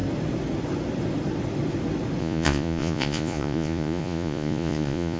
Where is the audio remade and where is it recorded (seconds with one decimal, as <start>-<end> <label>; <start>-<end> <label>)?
0.0-2.2 recorded; 2.2-5.2 remade